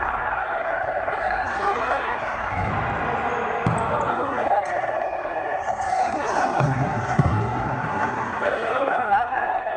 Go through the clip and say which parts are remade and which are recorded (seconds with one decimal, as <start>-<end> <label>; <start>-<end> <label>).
0.0-2.7 remade; 2.7-4.1 recorded; 4.1-9.8 remade